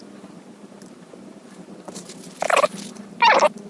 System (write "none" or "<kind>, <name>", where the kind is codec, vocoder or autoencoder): none